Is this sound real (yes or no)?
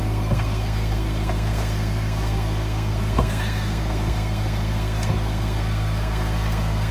no